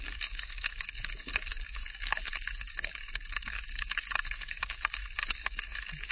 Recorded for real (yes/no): no